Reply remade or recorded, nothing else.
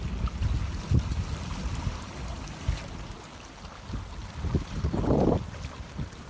recorded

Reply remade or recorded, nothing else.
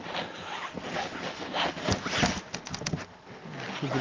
recorded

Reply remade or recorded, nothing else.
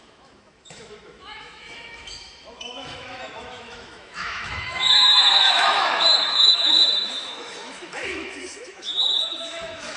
remade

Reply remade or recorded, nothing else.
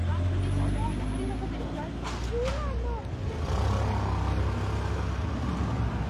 recorded